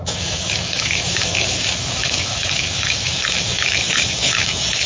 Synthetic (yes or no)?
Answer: yes